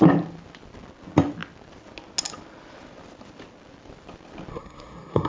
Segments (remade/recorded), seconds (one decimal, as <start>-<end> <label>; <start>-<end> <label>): 0.0-4.5 recorded; 4.5-5.3 remade